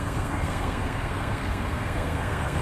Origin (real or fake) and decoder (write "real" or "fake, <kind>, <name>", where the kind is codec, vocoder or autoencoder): fake, codec, SNAC